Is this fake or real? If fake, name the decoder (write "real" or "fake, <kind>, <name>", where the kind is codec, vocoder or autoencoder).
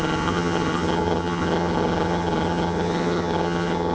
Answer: fake, vocoder, HiFi-GAN